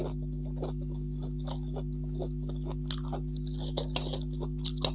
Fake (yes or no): no